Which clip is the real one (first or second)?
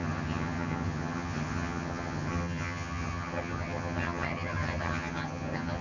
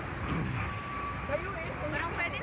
second